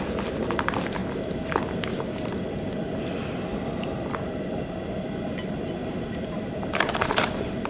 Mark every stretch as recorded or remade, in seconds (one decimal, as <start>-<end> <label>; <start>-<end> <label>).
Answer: 0.0-5.8 recorded; 5.8-7.7 remade